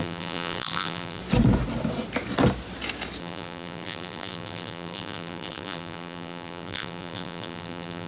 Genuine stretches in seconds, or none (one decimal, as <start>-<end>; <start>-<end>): 1.2-3.2